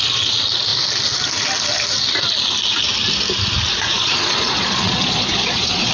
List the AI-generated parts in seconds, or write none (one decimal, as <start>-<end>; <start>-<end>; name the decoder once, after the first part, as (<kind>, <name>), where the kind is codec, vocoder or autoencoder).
3.7-5.9 (vocoder, Vocos)